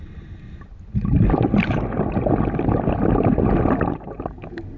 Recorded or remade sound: recorded